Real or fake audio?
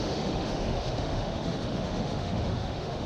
fake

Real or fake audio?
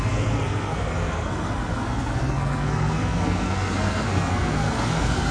fake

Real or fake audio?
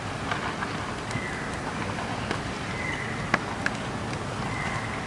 real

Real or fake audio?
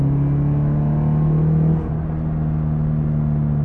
real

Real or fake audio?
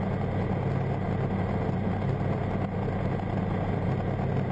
real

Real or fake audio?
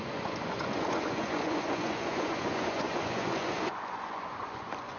fake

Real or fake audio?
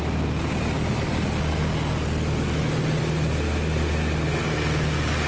real